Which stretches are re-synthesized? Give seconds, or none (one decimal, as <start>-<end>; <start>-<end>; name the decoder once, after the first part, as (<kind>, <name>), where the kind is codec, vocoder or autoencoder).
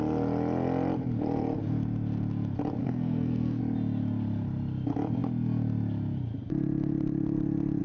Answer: 2.8-3.6 (codec, SNAC)